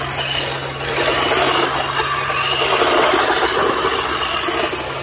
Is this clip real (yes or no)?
yes